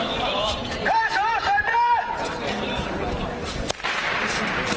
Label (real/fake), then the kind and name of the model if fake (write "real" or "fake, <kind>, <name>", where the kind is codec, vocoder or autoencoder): fake, vocoder, BigVGAN v2